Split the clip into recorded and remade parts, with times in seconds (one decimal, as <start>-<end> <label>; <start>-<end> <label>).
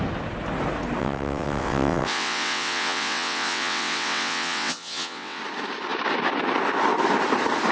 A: 0.0-1.0 recorded; 1.0-5.4 remade; 5.4-7.7 recorded